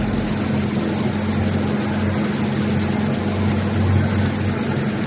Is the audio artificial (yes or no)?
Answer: no